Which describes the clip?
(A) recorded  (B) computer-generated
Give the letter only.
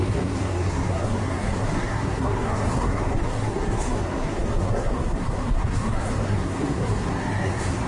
B